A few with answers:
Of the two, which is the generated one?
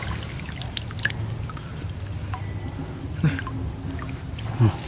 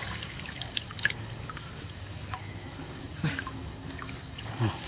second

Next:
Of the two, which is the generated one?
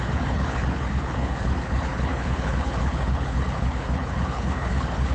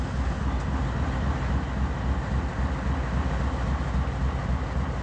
first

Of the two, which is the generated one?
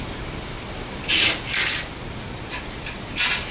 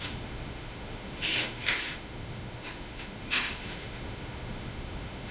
second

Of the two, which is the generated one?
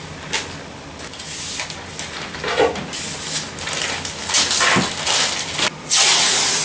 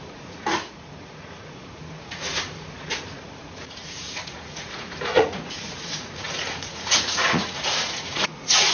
second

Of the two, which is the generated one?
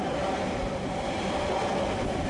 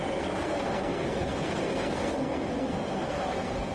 second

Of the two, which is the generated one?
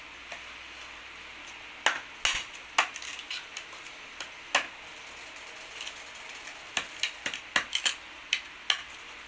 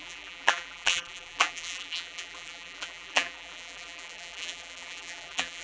second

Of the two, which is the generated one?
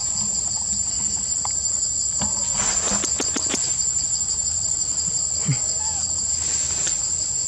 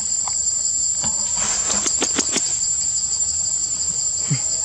second